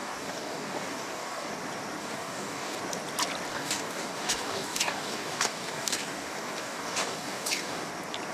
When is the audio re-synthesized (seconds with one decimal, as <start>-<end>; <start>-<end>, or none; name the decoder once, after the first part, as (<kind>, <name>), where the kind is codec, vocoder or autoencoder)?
0.0-1.5 (codec, DAC); 2.0-2.8; 3.5-7.9

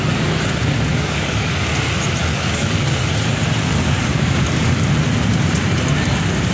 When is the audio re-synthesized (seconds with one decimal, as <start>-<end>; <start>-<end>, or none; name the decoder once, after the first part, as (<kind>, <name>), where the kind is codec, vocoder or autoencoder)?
0.9-1.5 (codec, DAC); 2.2-3.1; 3.7-4.9

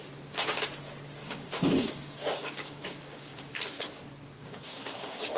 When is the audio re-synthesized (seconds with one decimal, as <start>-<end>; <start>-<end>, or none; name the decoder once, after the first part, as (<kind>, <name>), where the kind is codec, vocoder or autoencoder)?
1.2-3.5 (codec, DAC); 4.4-5.4

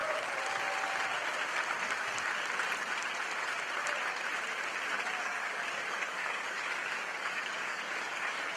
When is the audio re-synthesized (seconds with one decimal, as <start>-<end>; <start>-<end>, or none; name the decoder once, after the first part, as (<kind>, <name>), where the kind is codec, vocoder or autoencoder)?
5.2-8.6 (codec, DAC)